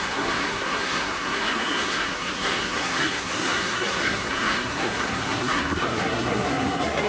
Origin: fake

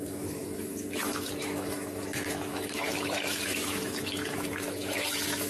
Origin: fake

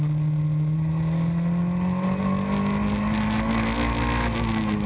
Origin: real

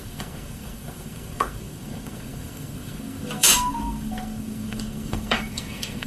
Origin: fake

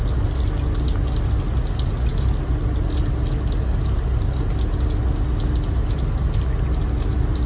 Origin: real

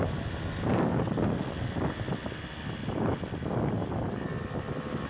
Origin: real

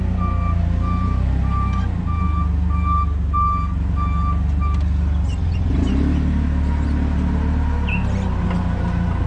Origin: real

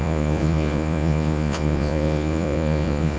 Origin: fake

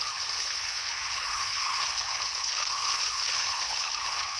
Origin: fake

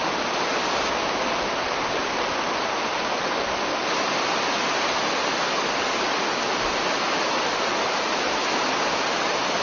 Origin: real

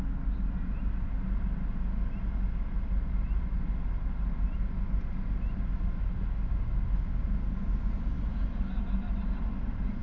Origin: real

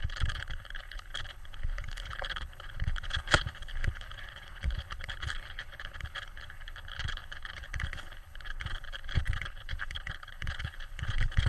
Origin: fake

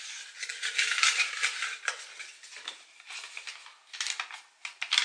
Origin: real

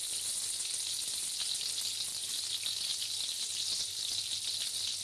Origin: real